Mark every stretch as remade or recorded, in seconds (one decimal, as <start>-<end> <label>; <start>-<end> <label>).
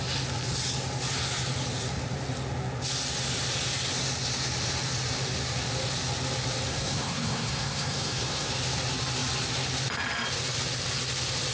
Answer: 0.0-6.7 recorded; 6.7-8.5 remade; 8.5-11.5 recorded